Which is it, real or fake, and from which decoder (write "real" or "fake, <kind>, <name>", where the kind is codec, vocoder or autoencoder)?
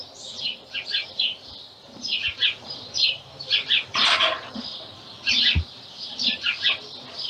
fake, vocoder, BigVGAN v2